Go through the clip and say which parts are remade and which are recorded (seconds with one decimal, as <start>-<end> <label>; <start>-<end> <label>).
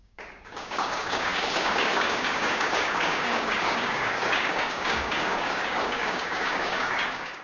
0.0-7.4 remade